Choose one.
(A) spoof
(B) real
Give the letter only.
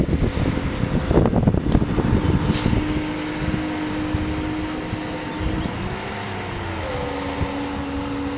B